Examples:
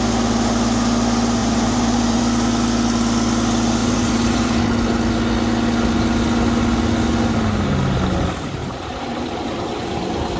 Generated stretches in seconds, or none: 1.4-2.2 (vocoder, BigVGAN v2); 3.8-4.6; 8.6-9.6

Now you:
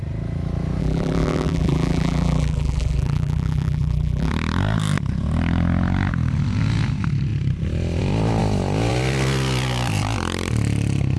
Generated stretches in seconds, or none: 0.8-4.3 (vocoder, BigVGAN v2)

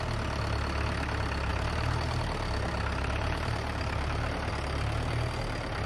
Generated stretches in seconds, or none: 1.5-4.5 (vocoder, BigVGAN v2)

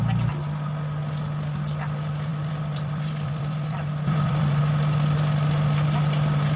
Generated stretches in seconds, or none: 2.3-4.6 (vocoder, BigVGAN v2)